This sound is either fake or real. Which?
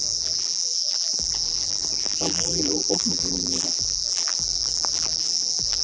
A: fake